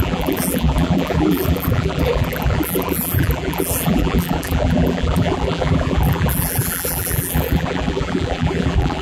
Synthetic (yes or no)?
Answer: yes